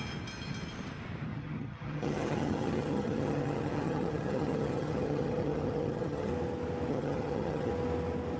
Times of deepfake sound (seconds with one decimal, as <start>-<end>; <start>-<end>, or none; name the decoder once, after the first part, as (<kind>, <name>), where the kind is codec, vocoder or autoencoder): 1.3-6.3 (vocoder, HiFi-GAN); 6.9-7.7